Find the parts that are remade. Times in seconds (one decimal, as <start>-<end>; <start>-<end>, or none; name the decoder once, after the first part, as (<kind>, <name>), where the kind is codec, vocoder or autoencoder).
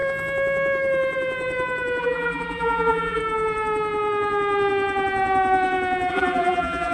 2.0-3.2 (vocoder, BigVGAN v2); 6.1-6.9